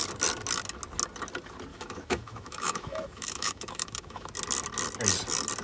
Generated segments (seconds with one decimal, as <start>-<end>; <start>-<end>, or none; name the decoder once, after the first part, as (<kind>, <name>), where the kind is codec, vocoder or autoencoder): 1.7-4.3 (autoencoder, DAC-VAE)